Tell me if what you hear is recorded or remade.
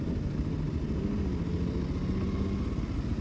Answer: recorded